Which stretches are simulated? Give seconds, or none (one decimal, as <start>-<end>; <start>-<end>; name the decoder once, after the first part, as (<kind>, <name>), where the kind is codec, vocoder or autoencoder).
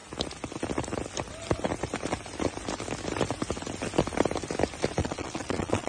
5.0-5.9 (vocoder, Vocos)